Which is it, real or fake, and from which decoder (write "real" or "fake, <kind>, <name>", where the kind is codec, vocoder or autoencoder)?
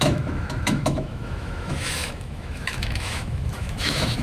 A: fake, autoencoder, DAC-VAE